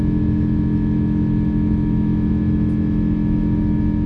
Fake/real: real